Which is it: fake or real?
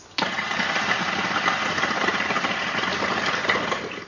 real